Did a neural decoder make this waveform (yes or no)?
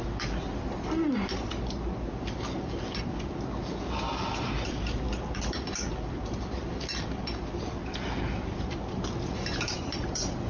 no